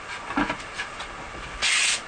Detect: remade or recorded recorded